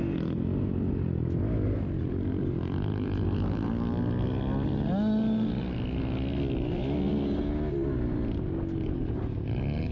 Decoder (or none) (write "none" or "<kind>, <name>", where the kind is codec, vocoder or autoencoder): none